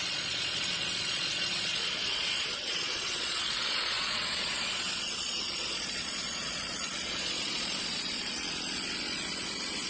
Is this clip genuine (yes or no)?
no